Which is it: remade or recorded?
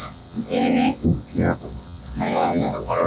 remade